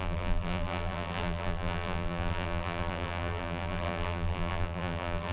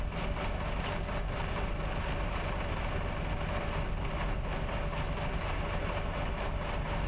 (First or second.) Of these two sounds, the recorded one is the second